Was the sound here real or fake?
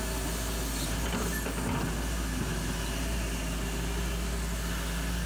real